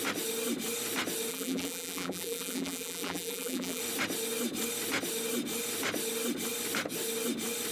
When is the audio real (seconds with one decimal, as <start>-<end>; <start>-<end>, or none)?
0.0-1.3; 3.8-7.7